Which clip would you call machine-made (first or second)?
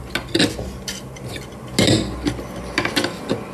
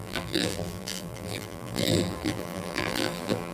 second